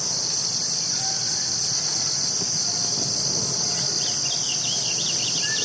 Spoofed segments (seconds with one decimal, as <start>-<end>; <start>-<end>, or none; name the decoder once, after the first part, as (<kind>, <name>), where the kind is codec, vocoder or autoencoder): none